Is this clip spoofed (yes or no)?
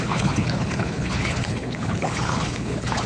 yes